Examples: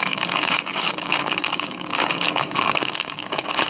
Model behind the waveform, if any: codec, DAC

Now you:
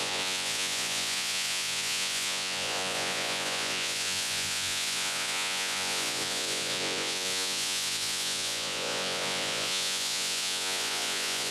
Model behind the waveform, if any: vocoder, Vocos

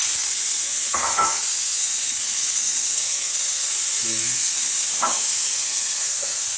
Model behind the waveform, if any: codec, SNAC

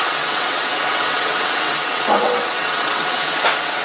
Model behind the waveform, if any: vocoder, WaveNeXt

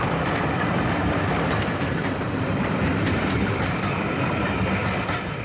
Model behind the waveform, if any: vocoder, BigVGAN v2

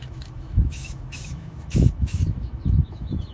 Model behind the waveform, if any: autoencoder, DAC-VAE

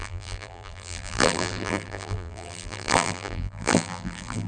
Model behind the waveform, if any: vocoder, BigVGAN v2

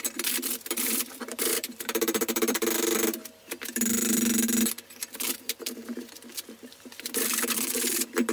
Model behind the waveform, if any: vocoder, BigVGAN v2